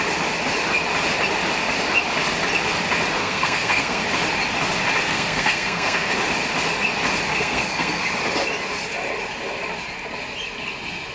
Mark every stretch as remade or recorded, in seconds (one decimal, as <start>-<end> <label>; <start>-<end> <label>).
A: 0.0-3.2 recorded; 3.2-4.0 remade; 4.0-5.1 recorded; 5.1-6.1 remade; 6.1-7.3 recorded; 7.3-8.0 remade; 8.0-11.1 recorded